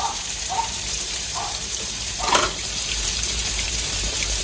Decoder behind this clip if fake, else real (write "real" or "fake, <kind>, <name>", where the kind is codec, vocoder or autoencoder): fake, vocoder, BigVGAN v2